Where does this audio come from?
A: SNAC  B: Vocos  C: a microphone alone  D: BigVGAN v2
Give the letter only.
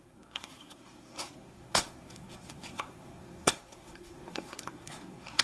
A